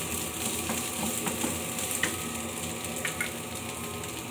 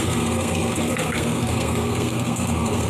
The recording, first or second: first